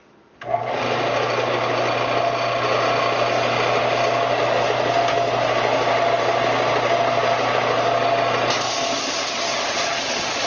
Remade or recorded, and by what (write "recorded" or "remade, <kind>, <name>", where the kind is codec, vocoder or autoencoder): recorded